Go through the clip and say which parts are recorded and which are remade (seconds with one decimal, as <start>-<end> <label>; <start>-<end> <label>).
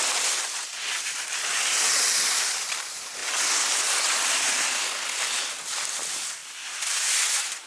0.0-7.7 recorded